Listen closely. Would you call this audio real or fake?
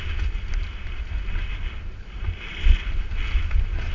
real